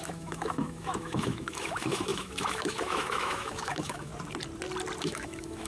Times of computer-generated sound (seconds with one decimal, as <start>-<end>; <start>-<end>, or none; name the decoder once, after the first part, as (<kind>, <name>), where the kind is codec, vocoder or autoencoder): 0.0-4.1 (autoencoder, DAC-VAE); 5.0-5.7